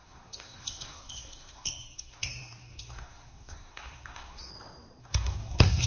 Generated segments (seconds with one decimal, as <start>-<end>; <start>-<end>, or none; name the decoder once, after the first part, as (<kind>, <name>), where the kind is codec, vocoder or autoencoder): 0.0-4.5 (codec, SNAC); 5.0-5.9